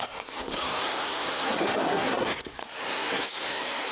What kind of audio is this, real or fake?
fake